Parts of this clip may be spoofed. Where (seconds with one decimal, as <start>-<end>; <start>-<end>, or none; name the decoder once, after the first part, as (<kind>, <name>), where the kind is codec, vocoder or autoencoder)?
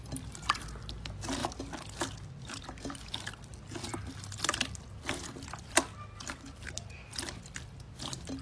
none